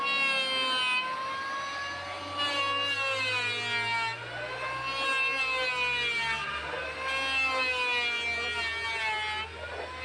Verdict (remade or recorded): recorded